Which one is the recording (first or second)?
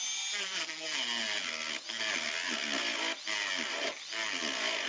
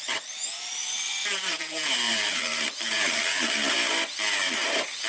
first